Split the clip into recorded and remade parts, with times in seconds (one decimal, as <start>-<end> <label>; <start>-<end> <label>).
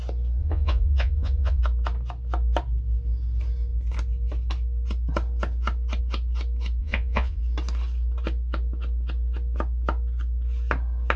0.0-0.4 recorded; 0.4-1.6 remade; 1.6-6.8 recorded; 6.8-7.4 remade; 7.4-11.2 recorded